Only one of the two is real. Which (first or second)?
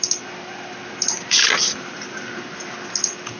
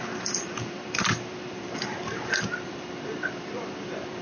first